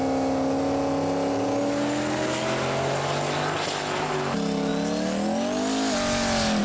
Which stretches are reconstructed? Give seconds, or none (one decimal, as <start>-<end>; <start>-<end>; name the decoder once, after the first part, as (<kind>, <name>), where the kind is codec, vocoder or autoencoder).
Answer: none